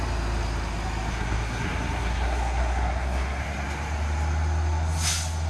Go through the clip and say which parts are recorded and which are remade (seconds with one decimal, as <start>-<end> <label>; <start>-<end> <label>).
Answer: 0.0-1.1 recorded; 1.1-3.4 remade; 3.4-5.5 recorded